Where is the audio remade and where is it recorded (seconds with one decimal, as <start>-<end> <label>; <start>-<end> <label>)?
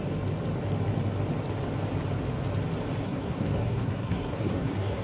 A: 0.0-3.0 recorded; 3.0-5.0 remade